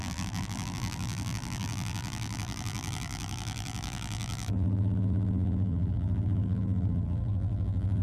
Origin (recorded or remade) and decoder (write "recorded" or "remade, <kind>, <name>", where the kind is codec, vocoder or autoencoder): remade, vocoder, BigVGAN v2